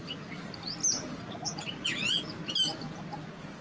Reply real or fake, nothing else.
real